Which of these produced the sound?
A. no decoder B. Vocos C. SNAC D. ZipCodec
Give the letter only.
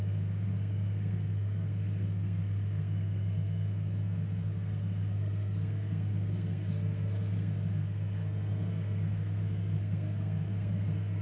C